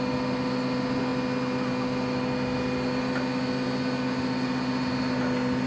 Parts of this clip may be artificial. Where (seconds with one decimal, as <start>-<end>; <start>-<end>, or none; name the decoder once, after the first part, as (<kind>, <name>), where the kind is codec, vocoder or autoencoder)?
none